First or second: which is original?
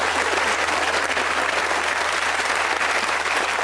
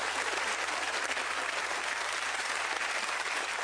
first